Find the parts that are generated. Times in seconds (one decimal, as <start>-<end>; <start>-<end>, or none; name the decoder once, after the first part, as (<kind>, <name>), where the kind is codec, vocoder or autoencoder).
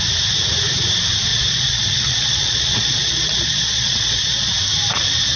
1.3-4.5 (vocoder, Vocos)